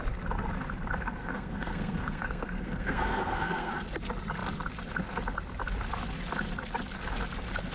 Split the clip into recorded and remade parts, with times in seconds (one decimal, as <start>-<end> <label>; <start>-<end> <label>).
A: 0.0-1.2 recorded; 1.2-3.7 remade; 3.7-7.7 recorded

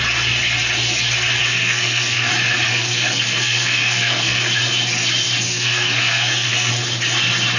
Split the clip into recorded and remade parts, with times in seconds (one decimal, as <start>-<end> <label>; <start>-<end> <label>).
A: 0.0-1.4 recorded; 1.4-2.3 remade; 2.3-2.7 recorded; 2.7-4.4 remade; 4.4-5.5 recorded; 5.5-6.7 remade; 6.7-7.6 recorded

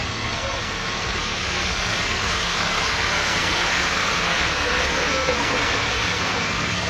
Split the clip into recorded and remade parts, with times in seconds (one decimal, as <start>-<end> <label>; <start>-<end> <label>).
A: 0.0-6.9 remade